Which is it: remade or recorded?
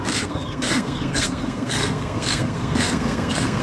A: remade